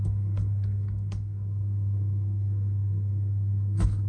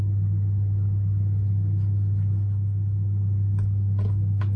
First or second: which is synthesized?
first